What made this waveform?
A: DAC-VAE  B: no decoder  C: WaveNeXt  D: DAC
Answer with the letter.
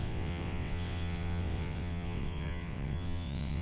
C